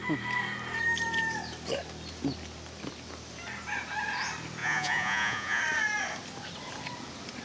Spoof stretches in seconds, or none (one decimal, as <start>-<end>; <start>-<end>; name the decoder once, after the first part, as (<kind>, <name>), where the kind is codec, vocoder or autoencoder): 4.6-5.6 (vocoder, Vocos)